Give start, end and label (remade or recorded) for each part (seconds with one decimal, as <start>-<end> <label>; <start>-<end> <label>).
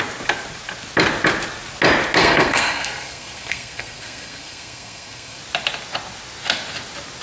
0.0-2.2 recorded; 2.2-5.4 remade; 5.4-7.2 recorded